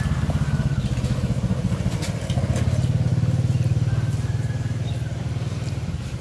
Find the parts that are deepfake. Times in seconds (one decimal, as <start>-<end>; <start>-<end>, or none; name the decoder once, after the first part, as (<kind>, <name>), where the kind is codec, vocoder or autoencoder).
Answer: none